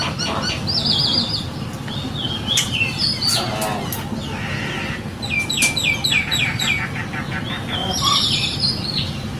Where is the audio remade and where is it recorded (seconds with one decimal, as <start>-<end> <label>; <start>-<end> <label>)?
0.0-7.8 recorded; 7.8-9.4 remade